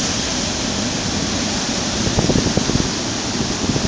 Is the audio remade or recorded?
recorded